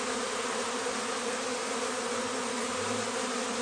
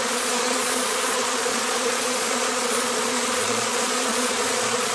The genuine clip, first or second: first